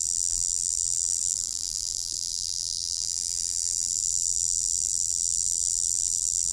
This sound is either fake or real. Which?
fake